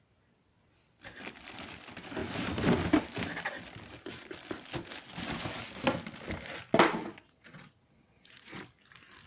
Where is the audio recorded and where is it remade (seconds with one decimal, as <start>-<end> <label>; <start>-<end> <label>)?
0.0-7.0 recorded; 7.0-8.6 remade; 8.6-9.3 recorded